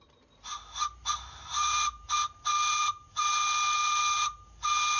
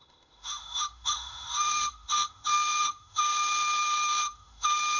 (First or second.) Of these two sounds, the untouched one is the first